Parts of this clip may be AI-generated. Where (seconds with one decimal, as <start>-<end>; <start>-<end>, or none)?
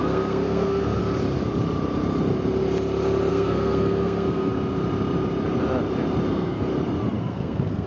0.0-1.0; 3.3-4.5; 6.3-6.7; 7.2-7.9